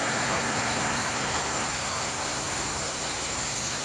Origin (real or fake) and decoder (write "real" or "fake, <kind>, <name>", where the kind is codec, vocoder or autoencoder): fake, codec, SNAC